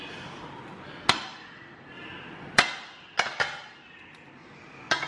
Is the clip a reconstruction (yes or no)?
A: no